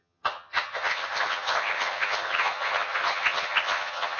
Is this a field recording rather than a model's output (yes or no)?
no